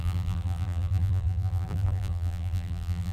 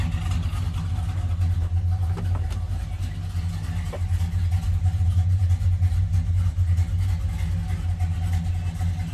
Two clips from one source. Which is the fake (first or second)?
first